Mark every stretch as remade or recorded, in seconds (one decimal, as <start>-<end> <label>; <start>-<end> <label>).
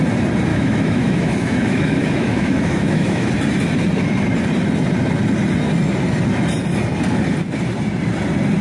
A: 0.0-0.5 recorded; 0.5-3.3 remade; 3.3-8.6 recorded